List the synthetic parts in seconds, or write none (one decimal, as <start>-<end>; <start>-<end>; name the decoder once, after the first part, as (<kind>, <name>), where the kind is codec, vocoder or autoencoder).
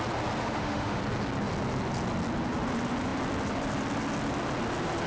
0.4-1.0 (autoencoder, DAC-VAE)